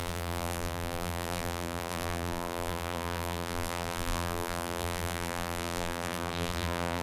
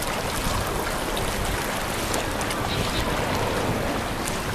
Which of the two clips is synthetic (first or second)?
first